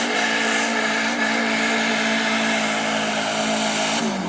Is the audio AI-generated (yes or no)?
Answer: no